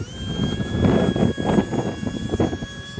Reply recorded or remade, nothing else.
recorded